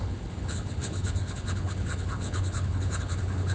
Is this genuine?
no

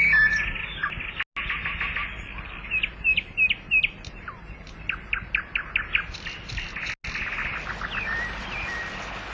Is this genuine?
yes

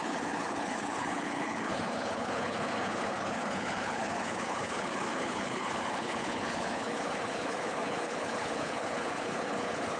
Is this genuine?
no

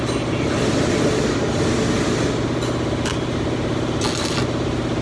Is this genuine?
yes